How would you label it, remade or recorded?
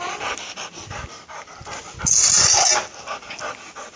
recorded